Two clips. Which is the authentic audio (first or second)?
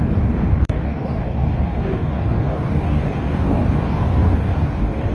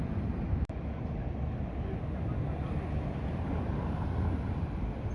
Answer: second